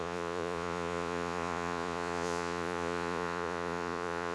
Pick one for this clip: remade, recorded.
remade